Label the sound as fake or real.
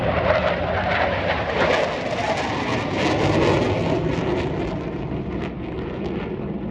real